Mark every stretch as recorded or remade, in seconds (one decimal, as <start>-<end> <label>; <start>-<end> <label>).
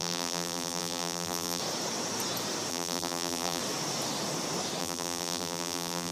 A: 0.0-1.6 remade; 1.6-2.7 recorded; 2.7-3.6 remade; 3.6-4.8 recorded; 4.8-6.1 remade